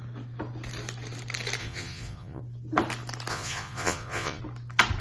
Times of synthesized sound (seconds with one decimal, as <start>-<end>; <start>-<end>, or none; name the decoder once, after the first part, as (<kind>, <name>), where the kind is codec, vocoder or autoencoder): 1.6-2.4 (vocoder, Vocos); 3.3-4.4